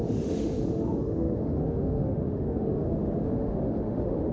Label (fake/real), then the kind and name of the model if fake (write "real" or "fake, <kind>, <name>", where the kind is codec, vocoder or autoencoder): fake, autoencoder, DAC-VAE